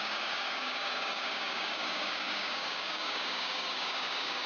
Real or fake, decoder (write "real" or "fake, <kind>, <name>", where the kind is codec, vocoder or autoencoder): fake, codec, DAC